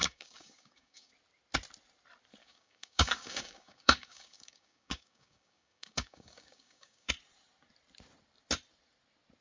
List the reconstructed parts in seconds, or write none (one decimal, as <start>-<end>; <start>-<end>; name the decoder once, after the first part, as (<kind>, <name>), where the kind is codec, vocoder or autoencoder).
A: 0.0-1.1 (codec, DAC); 2.4-7.1